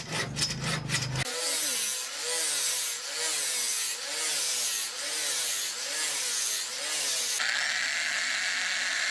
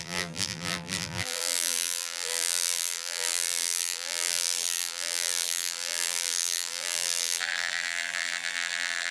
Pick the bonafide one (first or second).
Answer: first